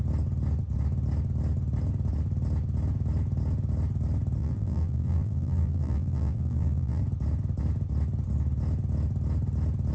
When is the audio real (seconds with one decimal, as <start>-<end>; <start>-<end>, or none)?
0.0-4.4; 7.0-9.9